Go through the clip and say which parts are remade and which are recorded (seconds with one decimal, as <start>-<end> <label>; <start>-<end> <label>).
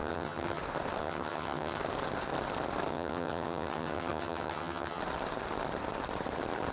0.0-0.6 remade; 0.6-1.0 recorded; 1.0-1.8 remade; 1.8-2.9 recorded; 2.9-5.0 remade; 5.0-6.7 recorded